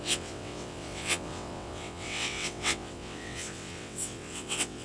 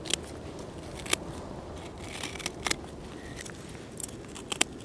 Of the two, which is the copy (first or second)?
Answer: first